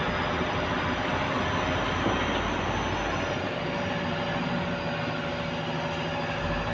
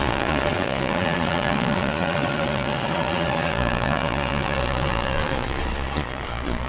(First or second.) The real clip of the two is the first